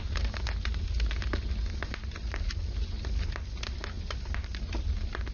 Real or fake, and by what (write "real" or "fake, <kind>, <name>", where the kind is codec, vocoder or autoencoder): real